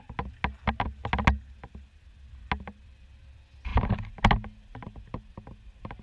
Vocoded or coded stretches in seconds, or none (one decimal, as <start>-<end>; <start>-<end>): none

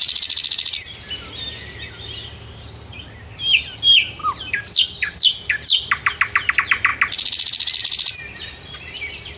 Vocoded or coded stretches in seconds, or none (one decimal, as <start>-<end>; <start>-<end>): none

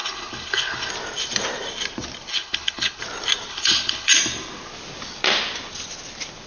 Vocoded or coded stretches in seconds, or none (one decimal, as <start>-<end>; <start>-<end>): 0.0-0.9; 2.3-3.0; 3.5-4.1